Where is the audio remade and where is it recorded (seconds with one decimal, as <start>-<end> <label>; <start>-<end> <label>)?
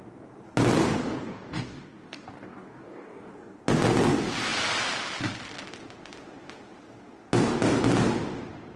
0.0-1.0 recorded; 1.0-3.6 remade; 3.6-8.8 recorded